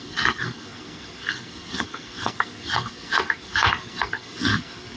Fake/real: fake